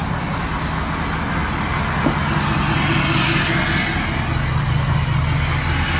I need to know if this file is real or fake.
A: real